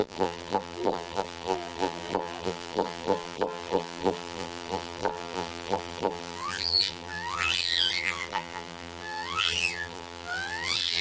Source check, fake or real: fake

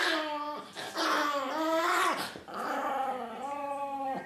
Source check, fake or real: real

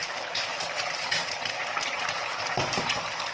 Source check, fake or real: fake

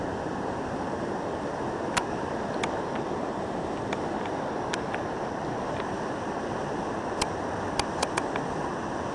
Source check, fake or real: real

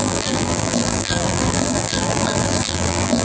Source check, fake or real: fake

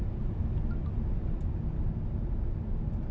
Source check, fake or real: real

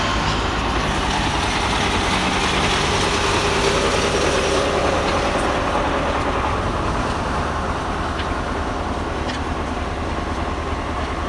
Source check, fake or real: real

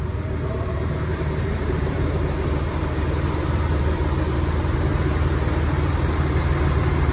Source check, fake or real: fake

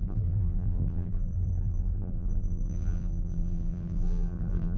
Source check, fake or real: fake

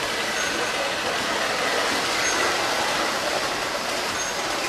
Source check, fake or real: fake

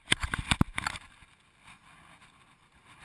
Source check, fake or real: real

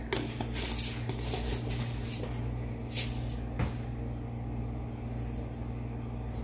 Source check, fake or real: real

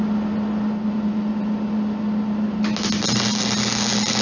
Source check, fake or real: real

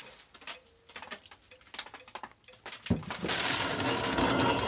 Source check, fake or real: real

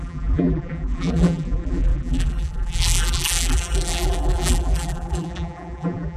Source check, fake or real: fake